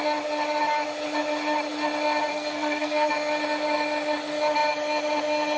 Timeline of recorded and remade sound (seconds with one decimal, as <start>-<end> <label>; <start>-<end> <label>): 0.0-2.3 recorded; 2.3-3.1 remade; 3.1-5.6 recorded